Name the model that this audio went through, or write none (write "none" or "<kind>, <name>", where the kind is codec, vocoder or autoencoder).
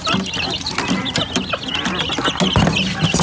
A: none